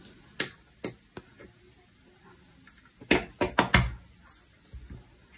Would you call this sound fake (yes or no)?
no